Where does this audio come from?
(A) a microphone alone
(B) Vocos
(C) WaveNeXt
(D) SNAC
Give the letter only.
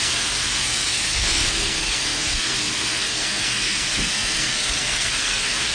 D